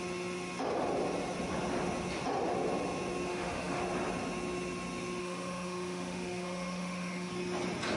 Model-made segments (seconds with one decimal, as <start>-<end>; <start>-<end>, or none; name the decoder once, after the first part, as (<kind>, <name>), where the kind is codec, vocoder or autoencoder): 3.3-3.8 (autoencoder, DAC-VAE); 5.2-7.3